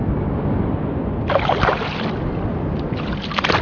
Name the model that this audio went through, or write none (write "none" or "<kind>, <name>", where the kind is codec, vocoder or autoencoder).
none